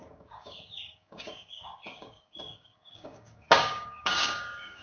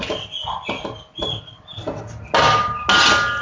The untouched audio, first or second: second